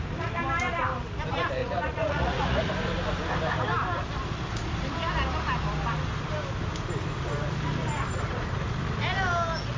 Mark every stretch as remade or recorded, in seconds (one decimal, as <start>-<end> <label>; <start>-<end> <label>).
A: 0.0-1.6 recorded; 1.6-2.7 remade; 2.7-9.8 recorded